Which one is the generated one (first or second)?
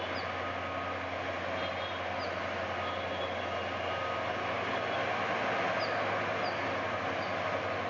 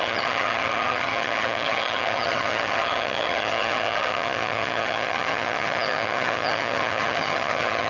second